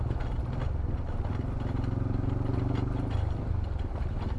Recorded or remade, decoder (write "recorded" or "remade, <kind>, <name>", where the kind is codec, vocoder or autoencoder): recorded